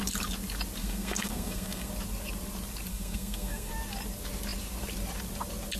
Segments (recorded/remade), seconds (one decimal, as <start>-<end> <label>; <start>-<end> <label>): 0.0-0.8 recorded; 0.8-1.9 remade; 1.9-2.9 recorded; 2.9-3.7 remade; 3.7-5.8 recorded